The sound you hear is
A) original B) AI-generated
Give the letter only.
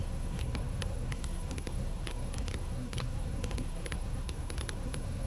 B